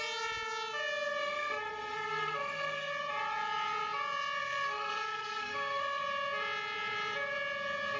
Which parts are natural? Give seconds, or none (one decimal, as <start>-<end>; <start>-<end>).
0.0-1.2; 2.9-4.4; 6.0-8.0